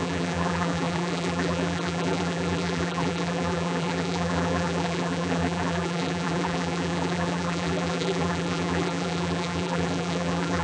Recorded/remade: remade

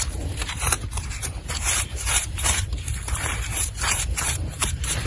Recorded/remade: remade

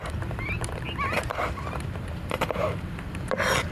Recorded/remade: remade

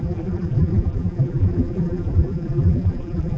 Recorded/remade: remade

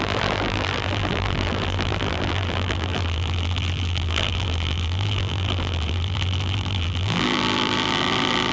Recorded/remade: remade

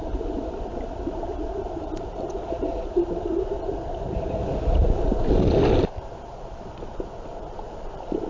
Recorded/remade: remade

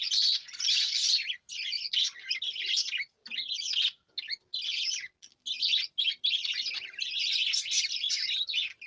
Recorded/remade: recorded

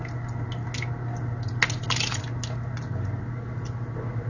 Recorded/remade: recorded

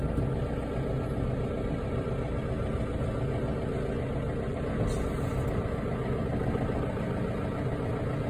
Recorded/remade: recorded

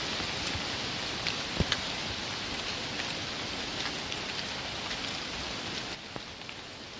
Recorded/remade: recorded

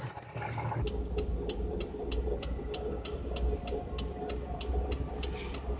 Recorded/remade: recorded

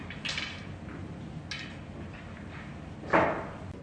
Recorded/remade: recorded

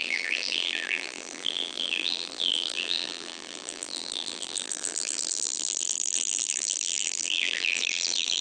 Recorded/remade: remade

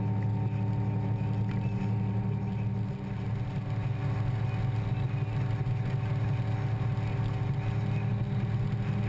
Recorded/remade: recorded